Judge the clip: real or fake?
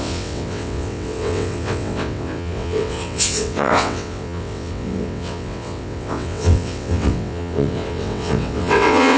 fake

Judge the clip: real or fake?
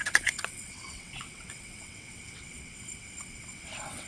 fake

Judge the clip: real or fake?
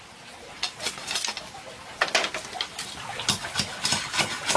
real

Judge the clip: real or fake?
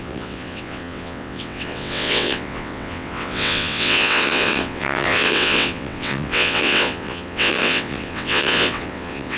fake